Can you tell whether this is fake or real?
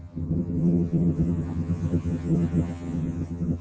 fake